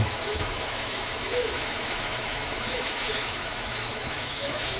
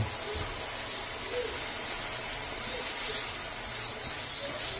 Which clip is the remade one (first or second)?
first